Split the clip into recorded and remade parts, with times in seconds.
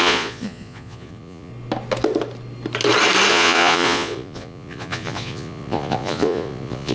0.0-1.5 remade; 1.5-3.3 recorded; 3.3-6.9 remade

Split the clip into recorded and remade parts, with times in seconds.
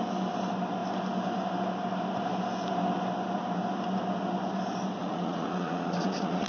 0.0-5.0 recorded; 5.0-6.5 remade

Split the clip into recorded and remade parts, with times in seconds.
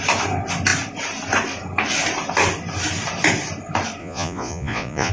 0.0-4.0 recorded; 4.0-5.1 remade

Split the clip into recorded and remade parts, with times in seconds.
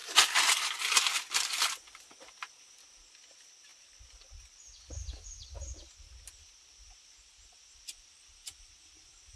0.0-9.4 recorded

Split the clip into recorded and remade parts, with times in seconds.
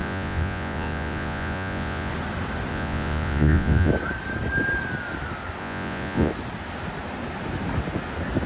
0.0-2.1 remade; 2.1-2.7 recorded; 2.7-3.9 remade; 3.9-5.6 recorded; 5.6-6.3 remade; 6.3-8.5 recorded